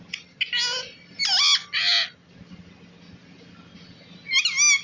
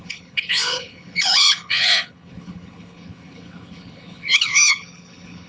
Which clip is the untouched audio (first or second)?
first